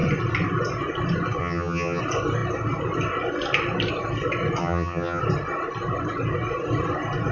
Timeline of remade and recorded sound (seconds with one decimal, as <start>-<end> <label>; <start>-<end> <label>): 0.0-1.4 recorded; 1.4-2.0 remade; 2.0-4.6 recorded; 4.6-5.2 remade; 5.2-7.3 recorded